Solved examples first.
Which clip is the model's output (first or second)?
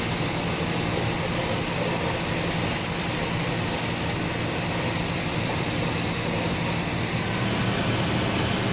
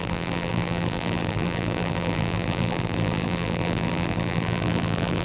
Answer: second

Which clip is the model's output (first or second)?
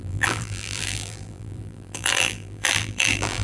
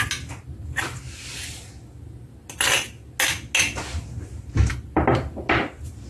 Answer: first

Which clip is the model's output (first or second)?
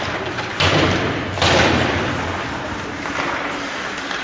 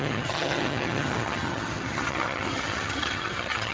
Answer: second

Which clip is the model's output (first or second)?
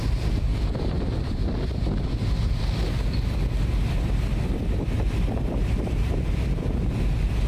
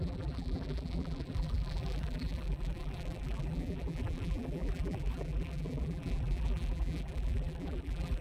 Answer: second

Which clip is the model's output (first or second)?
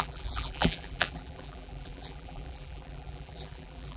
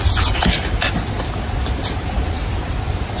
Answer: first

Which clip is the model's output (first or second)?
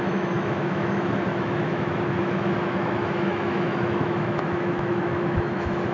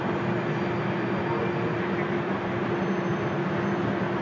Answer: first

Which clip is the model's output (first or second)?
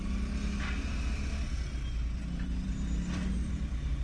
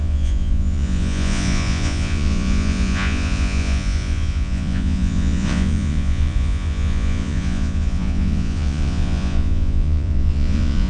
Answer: second